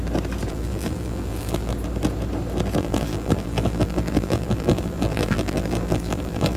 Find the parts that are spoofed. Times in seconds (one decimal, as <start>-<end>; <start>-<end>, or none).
0.5-1.7; 2.8-6.6